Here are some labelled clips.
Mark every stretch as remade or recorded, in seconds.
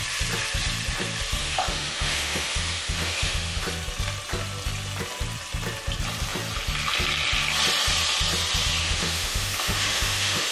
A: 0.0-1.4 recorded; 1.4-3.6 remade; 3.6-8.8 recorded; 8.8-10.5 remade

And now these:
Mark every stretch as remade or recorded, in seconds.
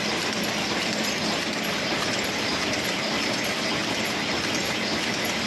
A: 0.0-5.5 recorded